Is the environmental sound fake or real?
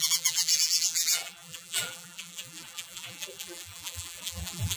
fake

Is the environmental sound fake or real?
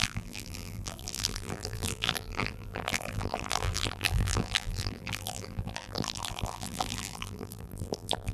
fake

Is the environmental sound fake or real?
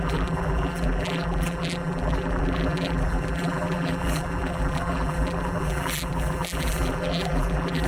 fake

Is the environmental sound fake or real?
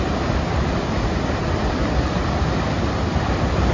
fake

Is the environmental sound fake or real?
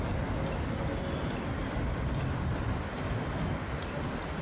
real